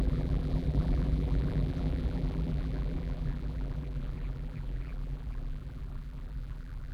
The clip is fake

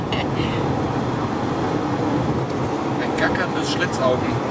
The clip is real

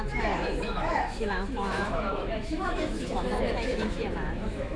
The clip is fake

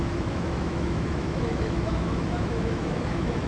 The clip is fake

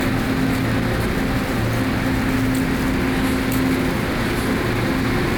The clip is real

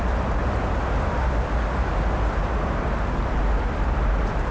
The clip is real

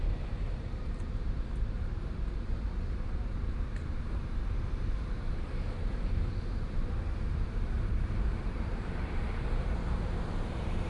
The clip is fake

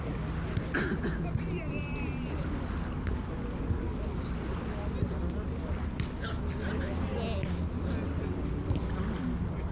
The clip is real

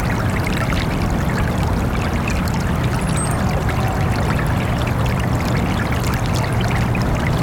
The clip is real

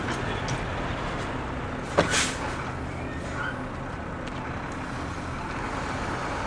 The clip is real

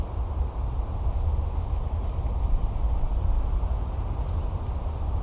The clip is real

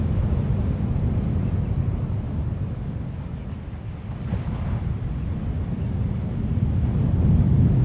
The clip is real